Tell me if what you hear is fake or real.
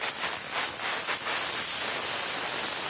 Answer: real